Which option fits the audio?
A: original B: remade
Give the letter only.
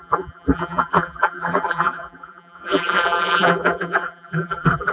B